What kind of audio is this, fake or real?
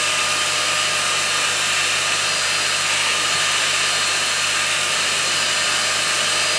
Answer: real